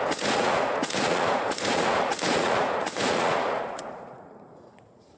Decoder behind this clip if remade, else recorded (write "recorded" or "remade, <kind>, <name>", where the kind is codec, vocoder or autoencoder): remade, vocoder, Vocos